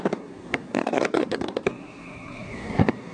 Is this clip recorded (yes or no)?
no